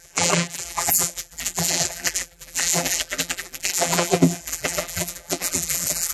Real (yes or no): no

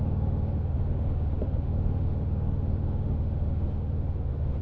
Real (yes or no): no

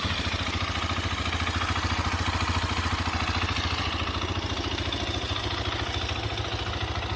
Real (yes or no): yes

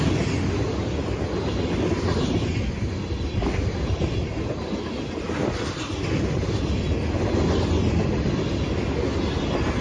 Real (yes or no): yes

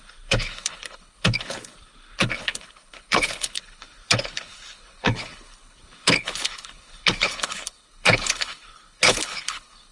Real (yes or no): no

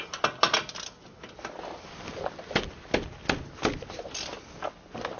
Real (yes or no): yes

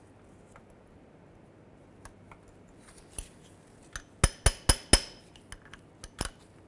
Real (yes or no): yes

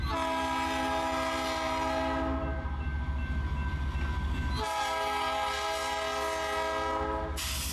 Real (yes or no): yes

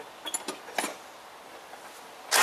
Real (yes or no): yes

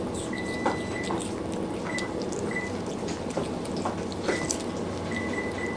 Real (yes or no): yes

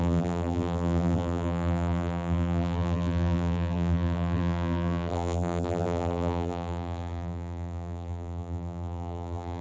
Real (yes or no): no